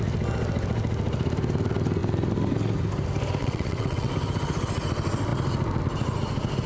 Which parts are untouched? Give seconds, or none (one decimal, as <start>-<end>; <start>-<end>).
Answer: 0.0-3.4; 4.1-6.7